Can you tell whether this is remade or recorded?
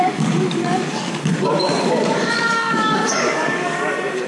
remade